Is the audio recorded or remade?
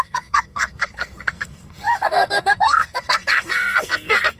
remade